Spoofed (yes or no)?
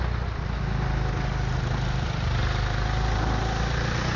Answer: no